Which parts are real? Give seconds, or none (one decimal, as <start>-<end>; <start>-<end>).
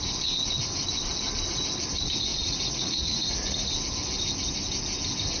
0.0-2.3; 3.7-5.4